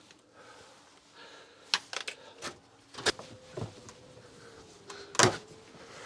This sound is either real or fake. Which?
real